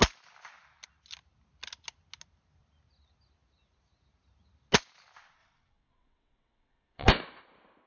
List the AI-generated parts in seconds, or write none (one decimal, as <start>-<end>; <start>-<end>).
5.4-7.1